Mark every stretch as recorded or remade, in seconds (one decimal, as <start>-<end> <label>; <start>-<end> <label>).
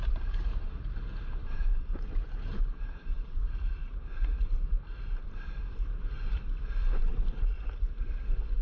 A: 0.0-8.6 remade